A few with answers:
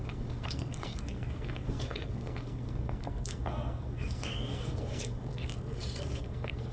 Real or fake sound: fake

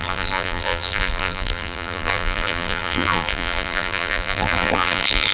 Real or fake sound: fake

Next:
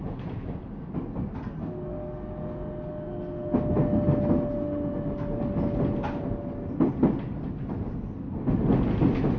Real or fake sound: real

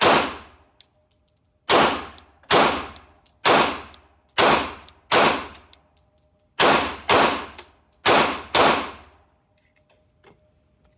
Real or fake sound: real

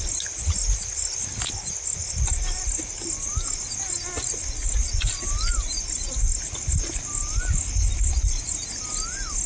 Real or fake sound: real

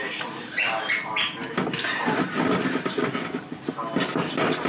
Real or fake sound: real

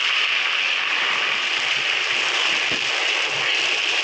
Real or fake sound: real